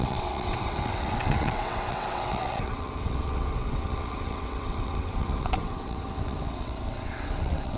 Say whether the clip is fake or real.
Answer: fake